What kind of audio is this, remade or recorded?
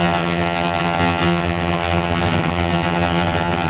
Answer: remade